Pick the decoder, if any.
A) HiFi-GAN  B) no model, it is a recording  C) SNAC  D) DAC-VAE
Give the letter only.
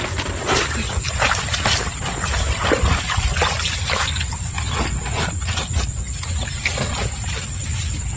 B